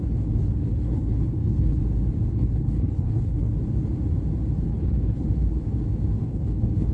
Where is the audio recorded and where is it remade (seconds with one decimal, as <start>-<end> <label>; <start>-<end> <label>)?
0.0-1.8 remade; 1.8-2.3 recorded; 2.3-3.5 remade; 3.5-4.7 recorded; 4.7-5.3 remade; 5.3-6.2 recorded; 6.2-6.9 remade